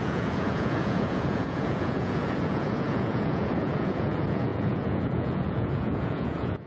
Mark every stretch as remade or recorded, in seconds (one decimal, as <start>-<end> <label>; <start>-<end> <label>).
0.0-6.7 remade